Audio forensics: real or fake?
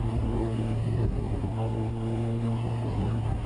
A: fake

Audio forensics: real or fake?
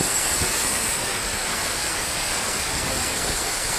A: fake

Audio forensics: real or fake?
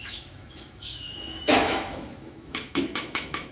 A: fake